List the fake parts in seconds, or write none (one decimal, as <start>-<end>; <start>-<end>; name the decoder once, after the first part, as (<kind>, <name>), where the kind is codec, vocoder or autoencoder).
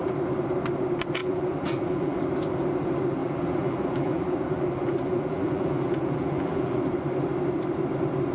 1.2-2.2 (vocoder, BigVGAN v2); 3.2-6.8